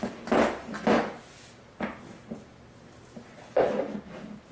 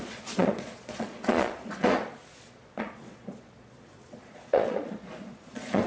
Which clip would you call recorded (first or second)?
first